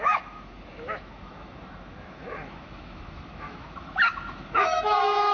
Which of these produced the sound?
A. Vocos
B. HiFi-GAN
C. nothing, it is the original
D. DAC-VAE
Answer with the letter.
D